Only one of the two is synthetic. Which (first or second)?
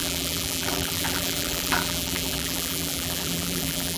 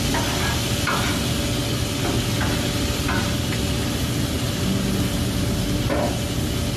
first